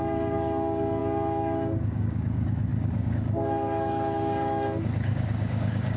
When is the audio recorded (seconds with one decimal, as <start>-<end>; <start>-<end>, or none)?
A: none